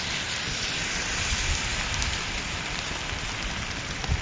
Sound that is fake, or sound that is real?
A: real